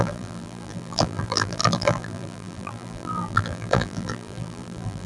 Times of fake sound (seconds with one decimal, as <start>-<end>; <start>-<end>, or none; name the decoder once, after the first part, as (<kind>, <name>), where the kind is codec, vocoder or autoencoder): 0.0-5.1 (vocoder, BigVGAN v2)